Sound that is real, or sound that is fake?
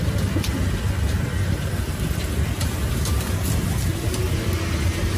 real